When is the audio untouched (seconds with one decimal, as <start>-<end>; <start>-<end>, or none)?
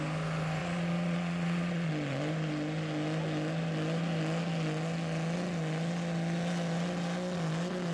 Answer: 0.0-0.6; 1.9-7.9